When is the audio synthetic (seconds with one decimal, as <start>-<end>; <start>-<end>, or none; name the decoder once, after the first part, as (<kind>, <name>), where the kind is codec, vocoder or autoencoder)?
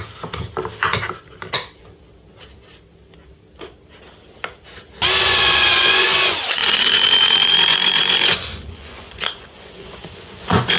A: 5.2-10.8 (vocoder, Vocos)